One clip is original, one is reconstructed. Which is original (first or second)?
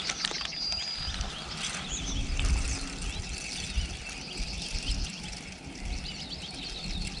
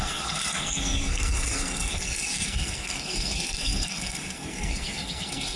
first